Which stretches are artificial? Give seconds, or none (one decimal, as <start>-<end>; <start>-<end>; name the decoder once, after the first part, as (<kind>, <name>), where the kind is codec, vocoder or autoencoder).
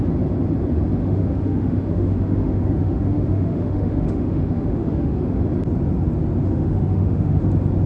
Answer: 1.0-5.4 (autoencoder, DAC-VAE); 6.4-7.4